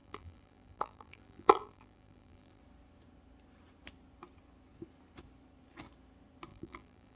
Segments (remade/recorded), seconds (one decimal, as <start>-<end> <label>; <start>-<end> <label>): 0.0-2.6 remade; 2.6-6.5 recorded; 6.5-7.2 remade